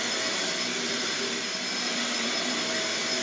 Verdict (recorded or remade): remade